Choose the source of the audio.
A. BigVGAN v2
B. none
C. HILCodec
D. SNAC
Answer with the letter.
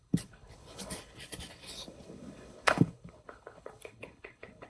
C